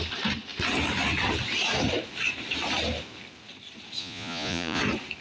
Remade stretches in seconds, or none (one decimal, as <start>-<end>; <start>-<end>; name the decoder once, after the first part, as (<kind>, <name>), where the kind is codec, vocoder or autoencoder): 4.0-4.8 (vocoder, Vocos)